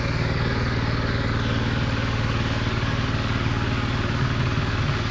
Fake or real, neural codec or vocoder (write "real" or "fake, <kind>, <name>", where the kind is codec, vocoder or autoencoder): fake, codec, DAC